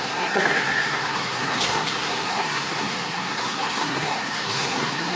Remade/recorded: remade